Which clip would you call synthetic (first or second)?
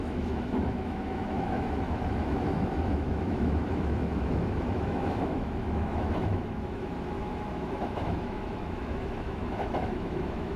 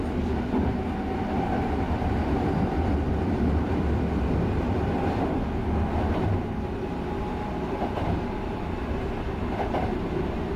first